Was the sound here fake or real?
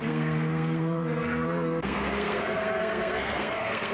fake